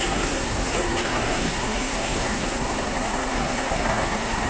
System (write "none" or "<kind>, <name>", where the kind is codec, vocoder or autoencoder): codec, SNAC